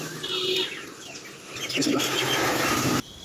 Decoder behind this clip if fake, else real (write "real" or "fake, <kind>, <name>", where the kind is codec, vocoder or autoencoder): real